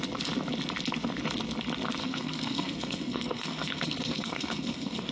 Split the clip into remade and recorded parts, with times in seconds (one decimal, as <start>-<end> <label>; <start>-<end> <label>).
0.0-2.0 recorded; 2.0-5.1 remade